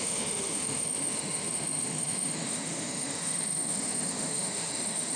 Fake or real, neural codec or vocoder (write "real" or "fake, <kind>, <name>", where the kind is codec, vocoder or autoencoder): fake, autoencoder, DAC-VAE